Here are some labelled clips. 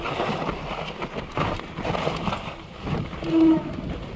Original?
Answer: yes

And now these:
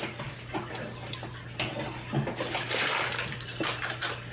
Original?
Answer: yes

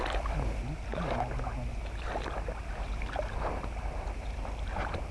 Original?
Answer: yes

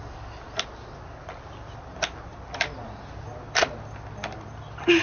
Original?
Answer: yes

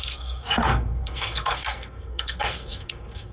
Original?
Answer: no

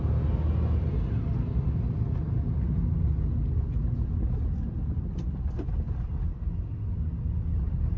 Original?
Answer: yes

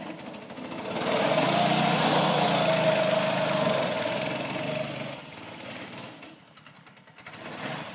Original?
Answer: yes